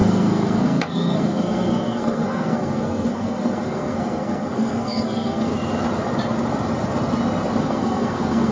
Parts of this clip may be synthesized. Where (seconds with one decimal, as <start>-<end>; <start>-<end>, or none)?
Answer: 0.0-5.5; 7.6-8.5